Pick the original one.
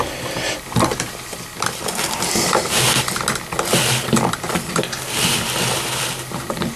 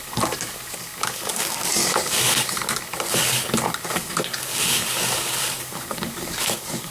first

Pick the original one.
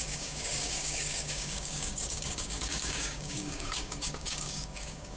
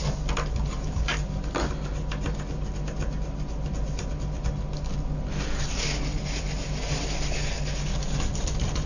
second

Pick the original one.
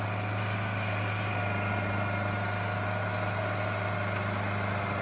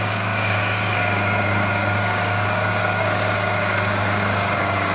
first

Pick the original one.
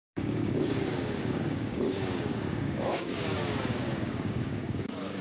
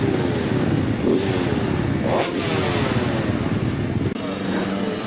second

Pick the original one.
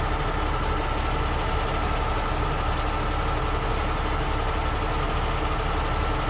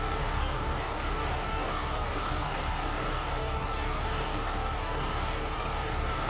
first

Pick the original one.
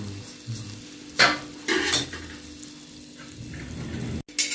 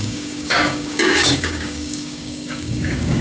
first